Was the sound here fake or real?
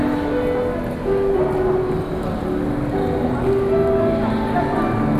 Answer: real